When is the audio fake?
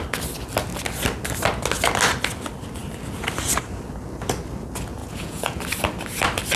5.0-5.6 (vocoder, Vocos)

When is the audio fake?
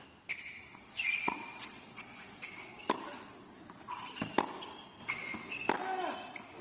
0.7-2.8 (vocoder, Vocos); 5.0-5.7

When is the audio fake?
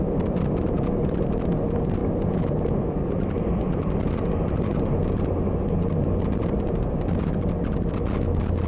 none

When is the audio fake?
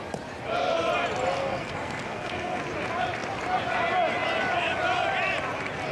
1.4-2.6 (codec, SNAC)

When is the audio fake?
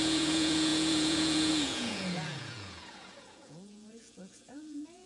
0.0-5.1 (vocoder, Vocos)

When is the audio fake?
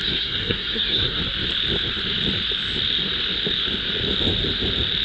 0.0-1.2 (codec, SNAC)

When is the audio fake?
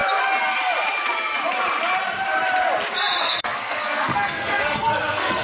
3.2-5.4 (codec, SNAC)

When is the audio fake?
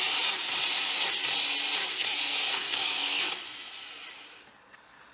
1.8-3.2 (codec, SNAC)